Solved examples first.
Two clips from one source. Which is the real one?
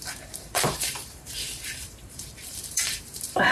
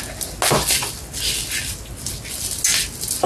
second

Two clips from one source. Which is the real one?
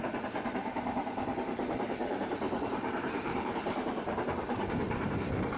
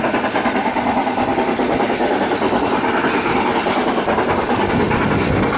second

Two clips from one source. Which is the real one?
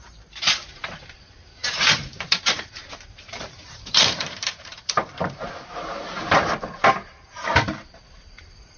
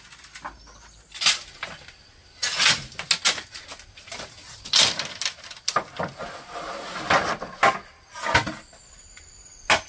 second